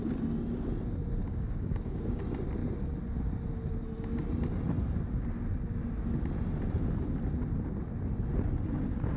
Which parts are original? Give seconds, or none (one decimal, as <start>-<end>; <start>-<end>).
0.0-1.2; 2.2-9.2